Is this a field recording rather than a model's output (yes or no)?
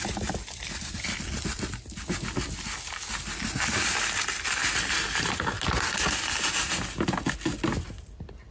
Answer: yes